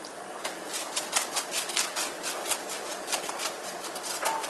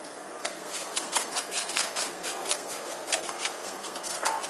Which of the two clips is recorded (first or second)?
first